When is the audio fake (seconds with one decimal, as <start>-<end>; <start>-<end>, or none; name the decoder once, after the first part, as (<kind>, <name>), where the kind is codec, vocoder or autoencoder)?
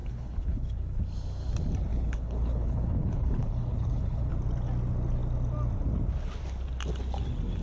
0.0-1.0 (codec, HILCodec); 1.9-4.3